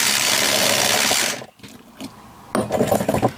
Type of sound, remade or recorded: recorded